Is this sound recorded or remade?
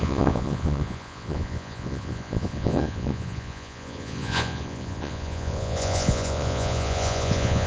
remade